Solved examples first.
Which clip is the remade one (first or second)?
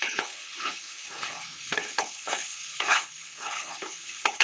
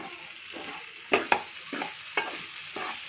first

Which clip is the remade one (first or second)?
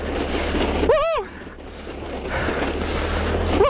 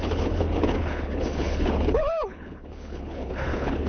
second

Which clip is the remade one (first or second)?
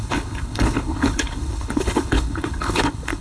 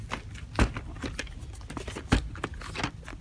first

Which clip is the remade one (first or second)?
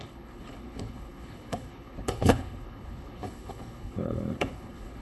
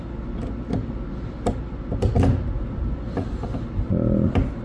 first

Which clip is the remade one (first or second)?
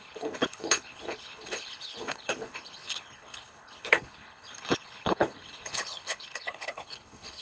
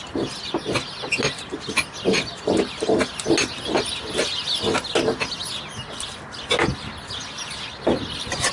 first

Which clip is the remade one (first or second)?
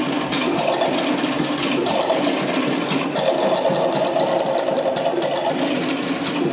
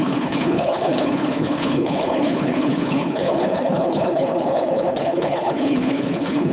second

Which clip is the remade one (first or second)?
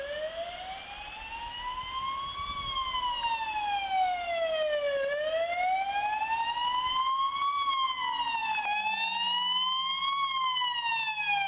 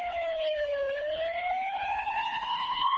second